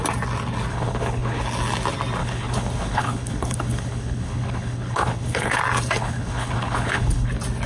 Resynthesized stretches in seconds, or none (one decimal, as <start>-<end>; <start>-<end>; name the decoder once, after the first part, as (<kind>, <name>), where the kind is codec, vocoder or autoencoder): 0.7-1.4 (codec, HILCodec); 2.2-5.6; 6.0-7.3